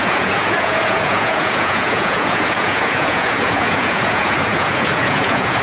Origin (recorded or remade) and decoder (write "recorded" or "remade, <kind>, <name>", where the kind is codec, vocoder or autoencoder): remade, vocoder, Vocos